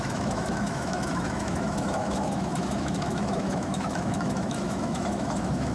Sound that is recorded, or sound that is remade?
remade